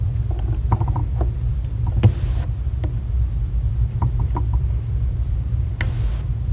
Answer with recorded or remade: recorded